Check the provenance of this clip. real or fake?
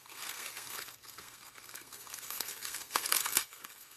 fake